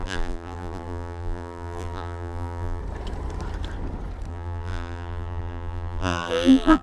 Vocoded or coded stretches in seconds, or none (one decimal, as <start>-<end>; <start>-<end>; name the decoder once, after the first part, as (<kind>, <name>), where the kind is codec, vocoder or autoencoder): 0.0-2.8 (vocoder, BigVGAN v2); 4.3-6.8